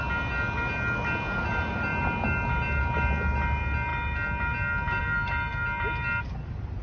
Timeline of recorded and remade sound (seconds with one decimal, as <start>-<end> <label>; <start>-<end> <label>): 0.0-6.8 recorded